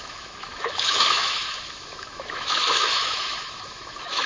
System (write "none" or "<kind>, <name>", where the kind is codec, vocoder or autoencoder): autoencoder, DAC-VAE